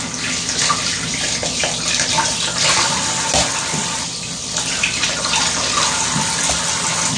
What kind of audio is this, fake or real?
real